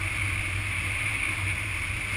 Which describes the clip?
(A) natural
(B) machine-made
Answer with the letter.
A